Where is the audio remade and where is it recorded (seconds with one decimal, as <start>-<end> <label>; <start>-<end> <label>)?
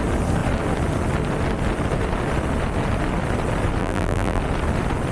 0.0-3.8 recorded; 3.8-4.4 remade; 4.4-5.1 recorded